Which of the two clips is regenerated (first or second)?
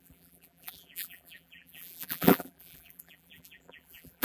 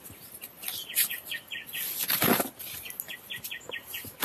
first